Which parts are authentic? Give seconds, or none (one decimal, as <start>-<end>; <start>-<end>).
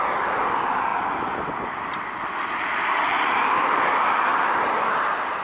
0.0-5.4